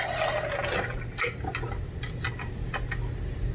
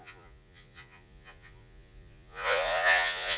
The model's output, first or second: second